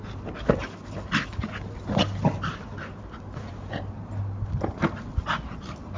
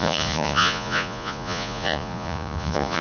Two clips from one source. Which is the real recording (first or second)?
first